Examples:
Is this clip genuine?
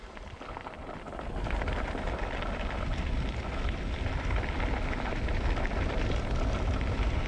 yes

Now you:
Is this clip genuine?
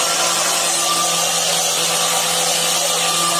yes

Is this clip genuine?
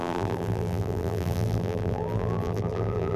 no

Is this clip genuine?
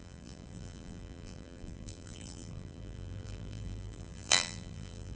no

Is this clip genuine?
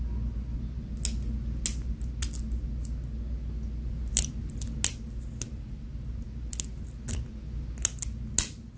yes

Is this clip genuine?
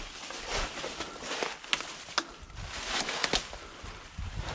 yes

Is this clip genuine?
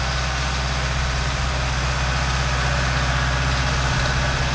yes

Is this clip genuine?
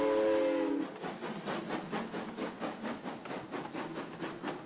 yes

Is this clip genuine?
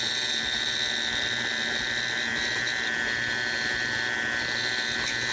yes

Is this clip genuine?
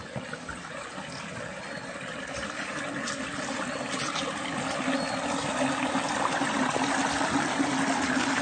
yes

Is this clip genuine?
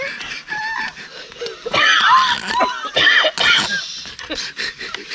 yes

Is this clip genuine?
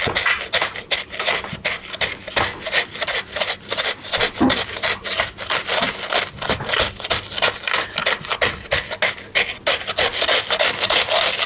yes